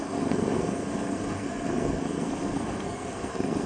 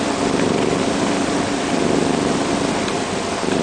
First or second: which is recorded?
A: second